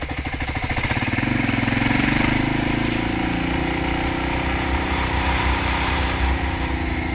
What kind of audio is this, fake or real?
real